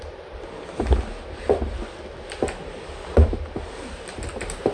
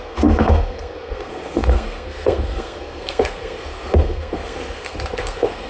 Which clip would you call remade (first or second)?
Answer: second